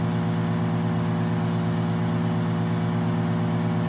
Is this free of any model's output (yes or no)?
yes